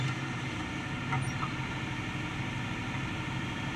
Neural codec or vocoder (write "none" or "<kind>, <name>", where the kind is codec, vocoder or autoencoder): none